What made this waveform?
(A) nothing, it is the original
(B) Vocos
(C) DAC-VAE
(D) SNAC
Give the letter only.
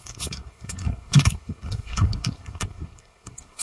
D